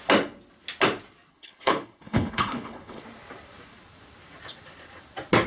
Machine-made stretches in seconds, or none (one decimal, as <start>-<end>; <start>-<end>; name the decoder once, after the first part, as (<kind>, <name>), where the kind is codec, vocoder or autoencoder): 1.3-3.0 (codec, HILCodec)